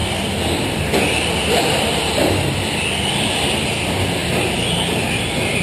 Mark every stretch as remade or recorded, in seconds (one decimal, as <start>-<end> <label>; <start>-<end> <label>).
0.0-5.6 recorded